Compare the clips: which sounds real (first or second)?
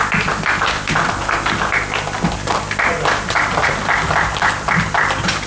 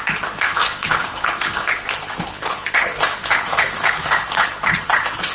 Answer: first